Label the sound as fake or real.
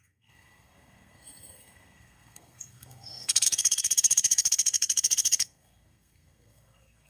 fake